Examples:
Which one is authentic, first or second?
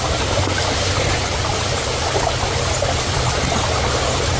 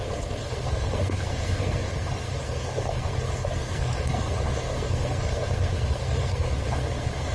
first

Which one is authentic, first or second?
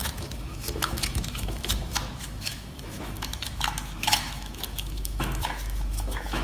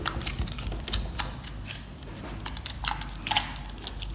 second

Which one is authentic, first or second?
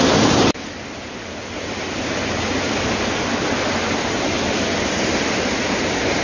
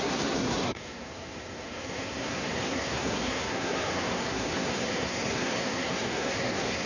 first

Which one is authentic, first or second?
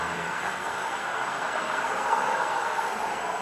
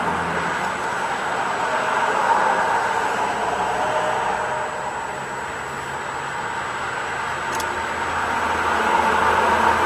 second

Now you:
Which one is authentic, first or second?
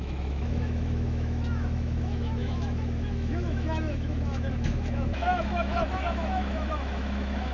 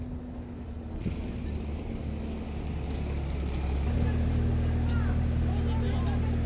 second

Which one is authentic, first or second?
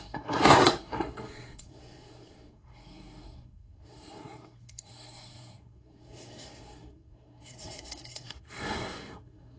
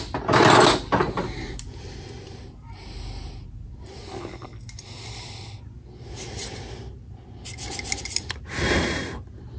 second